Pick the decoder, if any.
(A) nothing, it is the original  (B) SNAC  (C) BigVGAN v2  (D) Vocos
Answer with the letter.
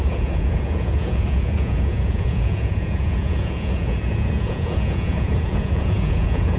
D